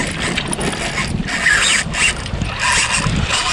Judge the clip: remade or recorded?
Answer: recorded